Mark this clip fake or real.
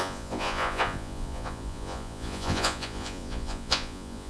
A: fake